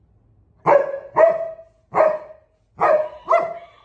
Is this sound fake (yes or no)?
no